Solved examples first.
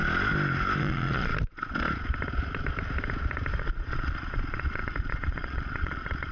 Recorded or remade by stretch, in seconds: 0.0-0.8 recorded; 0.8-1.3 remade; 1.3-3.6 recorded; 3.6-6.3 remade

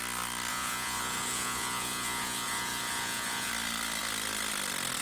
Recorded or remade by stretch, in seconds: 0.0-0.5 recorded; 0.5-3.5 remade; 3.5-5.0 recorded

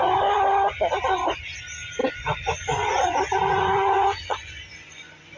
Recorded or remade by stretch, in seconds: 0.0-2.0 recorded; 2.0-5.4 remade

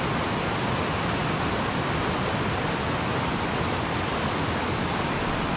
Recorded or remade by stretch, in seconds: 0.0-5.6 recorded

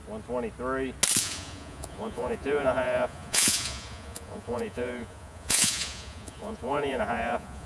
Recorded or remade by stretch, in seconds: 0.0-1.2 recorded; 1.2-7.7 remade

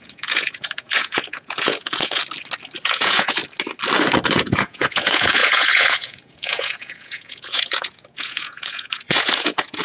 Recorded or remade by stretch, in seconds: 0.0-2.2 remade; 2.2-2.8 recorded; 2.8-3.4 remade; 3.4-4.3 recorded; 4.3-9.8 remade

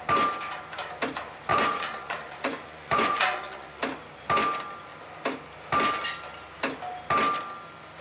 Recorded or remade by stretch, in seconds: 0.0-1.5 recorded; 1.5-3.8 remade; 3.8-8.0 recorded